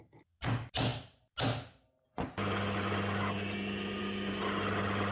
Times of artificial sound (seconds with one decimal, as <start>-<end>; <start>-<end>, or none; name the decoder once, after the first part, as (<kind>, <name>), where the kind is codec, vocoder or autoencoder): none